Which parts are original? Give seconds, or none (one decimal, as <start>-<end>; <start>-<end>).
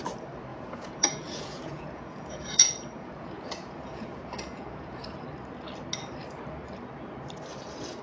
0.0-0.5; 5.2-8.0